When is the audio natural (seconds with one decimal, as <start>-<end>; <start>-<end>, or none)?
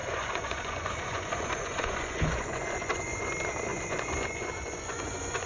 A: 3.3-3.7